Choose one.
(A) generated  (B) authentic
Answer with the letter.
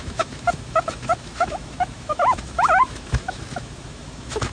A